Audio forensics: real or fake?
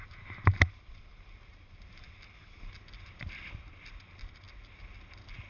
real